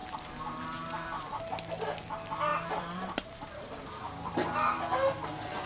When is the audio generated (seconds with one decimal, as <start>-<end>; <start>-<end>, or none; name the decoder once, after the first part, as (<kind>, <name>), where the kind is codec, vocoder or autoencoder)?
0.0-1.4 (vocoder, BigVGAN v2); 2.5-4.3